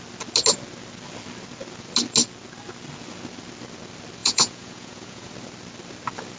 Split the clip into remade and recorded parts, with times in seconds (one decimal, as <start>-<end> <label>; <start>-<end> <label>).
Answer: 0.0-4.2 recorded; 4.2-5.3 remade; 5.3-6.4 recorded